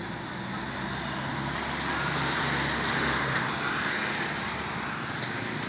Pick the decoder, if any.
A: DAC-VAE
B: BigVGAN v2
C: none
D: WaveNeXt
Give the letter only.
C